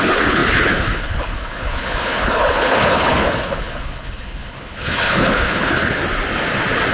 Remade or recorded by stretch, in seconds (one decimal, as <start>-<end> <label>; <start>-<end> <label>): 0.0-6.0 remade; 6.0-6.9 recorded